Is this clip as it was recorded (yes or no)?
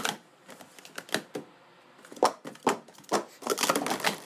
yes